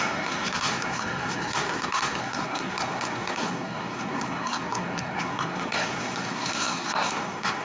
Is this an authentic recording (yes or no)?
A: no